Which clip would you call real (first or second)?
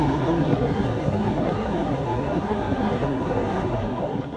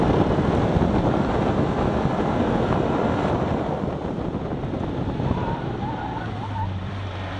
second